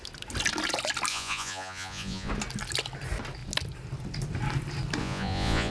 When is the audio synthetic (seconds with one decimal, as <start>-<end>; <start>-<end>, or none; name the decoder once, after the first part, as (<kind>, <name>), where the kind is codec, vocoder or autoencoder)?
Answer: 1.1-2.3 (vocoder, Vocos); 5.0-5.7